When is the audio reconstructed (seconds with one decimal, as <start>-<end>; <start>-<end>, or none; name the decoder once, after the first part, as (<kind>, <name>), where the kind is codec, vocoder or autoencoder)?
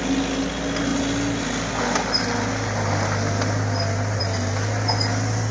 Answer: none